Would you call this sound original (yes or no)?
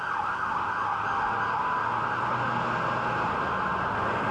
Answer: yes